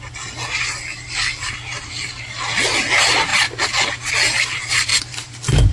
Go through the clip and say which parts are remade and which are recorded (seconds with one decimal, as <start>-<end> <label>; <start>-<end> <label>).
0.0-5.7 recorded